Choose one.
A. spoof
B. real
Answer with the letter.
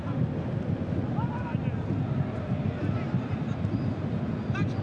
B